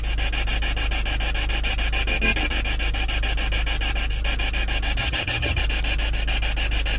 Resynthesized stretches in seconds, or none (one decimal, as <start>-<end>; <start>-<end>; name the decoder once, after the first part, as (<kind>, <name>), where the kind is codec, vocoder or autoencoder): 5.0-5.6 (vocoder, HiFi-GAN)